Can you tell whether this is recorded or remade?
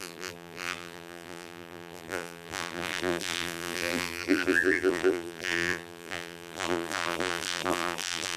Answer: remade